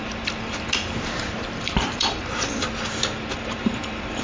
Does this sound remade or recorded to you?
remade